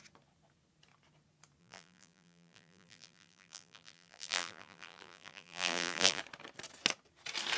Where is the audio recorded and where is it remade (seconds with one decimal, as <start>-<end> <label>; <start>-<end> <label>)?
0.0-1.6 recorded; 1.6-6.2 remade; 6.2-7.6 recorded